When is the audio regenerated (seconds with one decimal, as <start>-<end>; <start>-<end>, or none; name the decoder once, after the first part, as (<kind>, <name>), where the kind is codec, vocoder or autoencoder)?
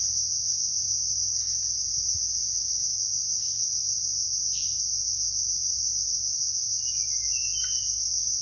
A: none